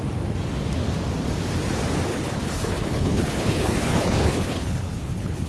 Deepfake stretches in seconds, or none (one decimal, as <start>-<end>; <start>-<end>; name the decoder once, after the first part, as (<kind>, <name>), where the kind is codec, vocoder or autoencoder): 2.1-5.5 (codec, HILCodec)